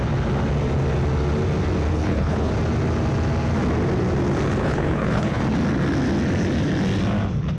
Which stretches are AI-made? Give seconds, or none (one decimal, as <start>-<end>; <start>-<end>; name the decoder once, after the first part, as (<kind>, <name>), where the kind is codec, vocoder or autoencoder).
1.9-2.5 (codec, HILCodec); 4.6-5.4